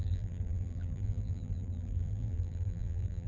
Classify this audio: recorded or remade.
remade